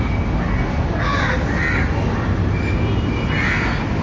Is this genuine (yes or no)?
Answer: yes